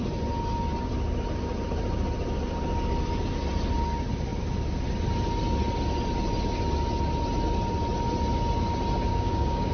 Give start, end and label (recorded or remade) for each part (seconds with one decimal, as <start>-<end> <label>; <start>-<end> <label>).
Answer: 0.0-9.1 recorded; 9.1-9.7 remade